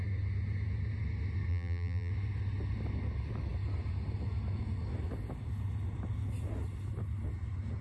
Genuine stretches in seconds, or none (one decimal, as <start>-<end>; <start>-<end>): 0.0-1.5; 2.1-7.8